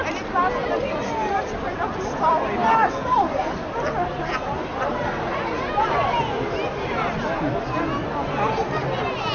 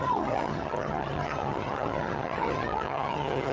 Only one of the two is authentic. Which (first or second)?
first